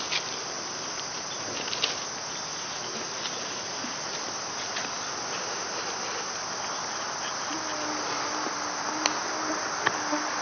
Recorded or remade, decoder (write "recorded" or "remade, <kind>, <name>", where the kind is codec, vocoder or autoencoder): recorded